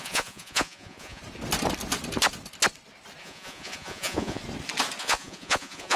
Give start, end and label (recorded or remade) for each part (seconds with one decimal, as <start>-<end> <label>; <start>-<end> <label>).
0.0-1.2 remade; 1.2-3.2 recorded; 3.2-4.4 remade; 4.4-5.0 recorded; 5.0-6.0 remade